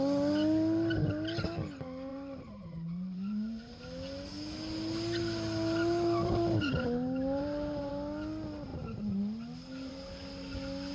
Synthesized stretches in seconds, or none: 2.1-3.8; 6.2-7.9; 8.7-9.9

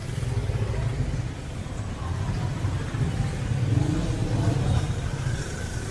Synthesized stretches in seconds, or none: 0.4-1.9; 4.2-5.9